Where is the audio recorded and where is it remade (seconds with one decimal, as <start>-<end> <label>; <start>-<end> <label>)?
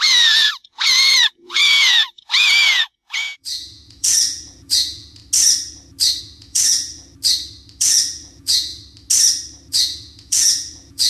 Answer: 0.0-5.2 remade; 5.2-6.2 recorded; 6.2-7.1 remade; 7.1-7.8 recorded; 7.8-8.7 remade; 8.7-9.7 recorded; 9.7-11.1 remade